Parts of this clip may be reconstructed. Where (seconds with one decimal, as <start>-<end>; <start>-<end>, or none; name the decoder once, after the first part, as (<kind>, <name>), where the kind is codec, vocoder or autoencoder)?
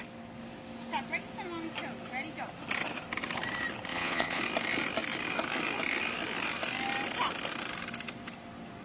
3.9-4.4 (vocoder, Vocos)